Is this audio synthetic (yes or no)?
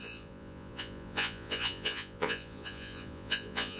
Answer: yes